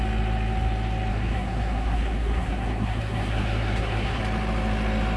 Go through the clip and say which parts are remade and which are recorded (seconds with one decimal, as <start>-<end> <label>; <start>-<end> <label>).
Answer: 0.0-1.1 recorded; 1.1-4.2 remade; 4.2-5.2 recorded